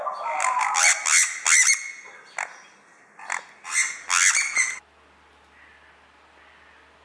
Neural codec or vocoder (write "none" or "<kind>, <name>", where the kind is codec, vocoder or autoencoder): none